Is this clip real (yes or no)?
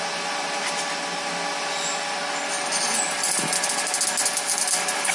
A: yes